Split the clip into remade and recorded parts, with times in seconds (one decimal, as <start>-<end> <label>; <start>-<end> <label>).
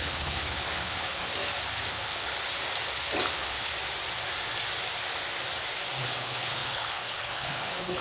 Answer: 0.0-1.2 remade; 1.2-1.9 recorded; 1.9-2.3 remade; 2.3-3.3 recorded; 3.3-3.7 remade; 3.7-6.0 recorded; 6.0-8.0 remade